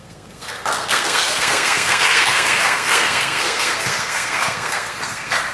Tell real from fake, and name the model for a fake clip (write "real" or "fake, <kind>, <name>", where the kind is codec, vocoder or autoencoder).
fake, codec, SNAC